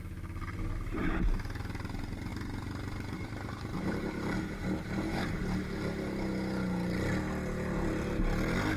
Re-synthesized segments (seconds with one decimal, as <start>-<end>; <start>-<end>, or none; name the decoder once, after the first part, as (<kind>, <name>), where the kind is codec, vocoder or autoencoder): 1.0-1.6 (vocoder, BigVGAN v2); 2.3-5.3